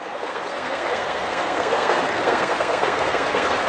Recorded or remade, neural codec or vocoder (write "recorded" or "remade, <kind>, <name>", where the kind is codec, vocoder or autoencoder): remade, codec, SNAC